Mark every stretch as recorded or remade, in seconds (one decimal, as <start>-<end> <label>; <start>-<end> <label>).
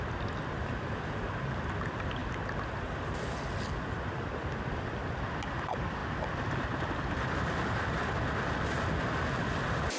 0.0-10.0 recorded